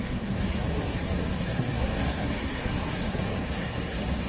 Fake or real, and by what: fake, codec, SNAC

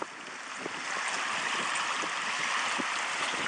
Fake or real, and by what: real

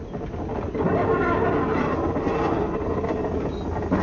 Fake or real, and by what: real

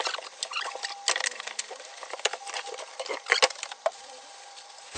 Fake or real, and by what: real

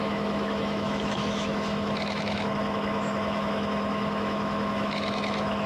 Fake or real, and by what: fake, autoencoder, DAC-VAE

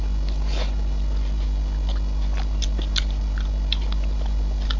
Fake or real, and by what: real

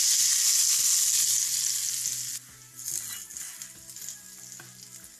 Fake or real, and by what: real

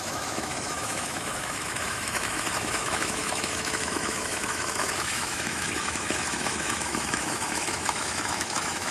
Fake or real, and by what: fake, autoencoder, DAC-VAE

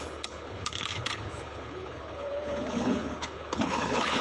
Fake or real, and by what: fake, codec, HILCodec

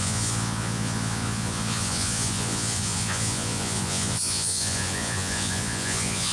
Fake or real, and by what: fake, vocoder, Vocos